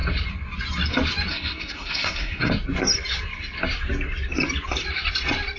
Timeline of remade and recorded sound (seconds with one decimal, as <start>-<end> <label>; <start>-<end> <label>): 0.0-1.3 recorded; 1.3-2.5 remade; 2.5-5.6 recorded